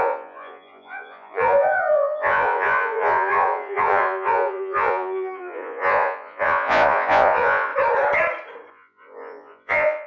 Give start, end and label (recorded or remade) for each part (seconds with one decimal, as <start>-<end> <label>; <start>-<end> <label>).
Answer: 0.0-7.7 remade; 7.7-8.7 recorded; 8.7-10.1 remade